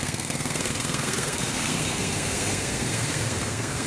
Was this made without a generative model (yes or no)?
no